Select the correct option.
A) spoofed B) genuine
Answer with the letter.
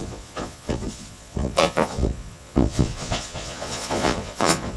A